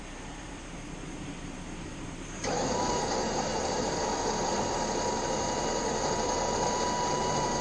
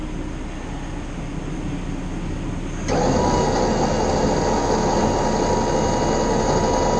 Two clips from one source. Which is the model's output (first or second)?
first